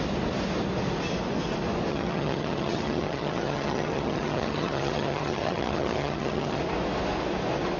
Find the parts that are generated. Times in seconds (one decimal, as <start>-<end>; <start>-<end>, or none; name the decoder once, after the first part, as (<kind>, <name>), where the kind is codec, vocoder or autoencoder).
1.9-6.6 (vocoder, HiFi-GAN)